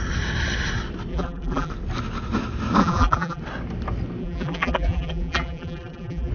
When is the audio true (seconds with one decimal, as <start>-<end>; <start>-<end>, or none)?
0.0-1.1; 1.7-2.8; 3.4-4.2